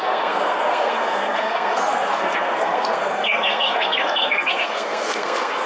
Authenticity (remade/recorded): remade